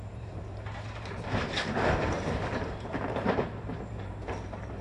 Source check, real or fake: fake